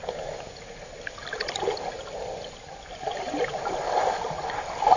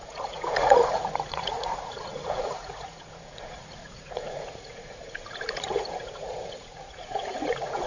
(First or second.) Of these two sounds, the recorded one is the first